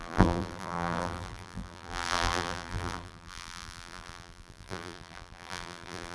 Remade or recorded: remade